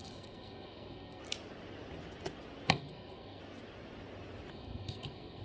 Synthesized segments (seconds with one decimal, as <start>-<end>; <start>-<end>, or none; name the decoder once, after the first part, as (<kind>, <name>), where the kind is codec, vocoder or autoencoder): 0.0-1.2 (codec, SNAC); 2.7-3.4; 4.5-5.4